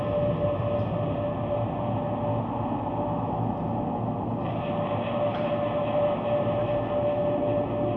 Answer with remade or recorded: recorded